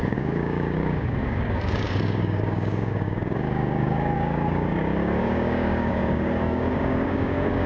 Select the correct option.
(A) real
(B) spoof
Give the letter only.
B